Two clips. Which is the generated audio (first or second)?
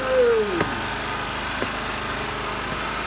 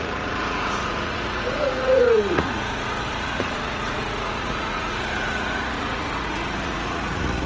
second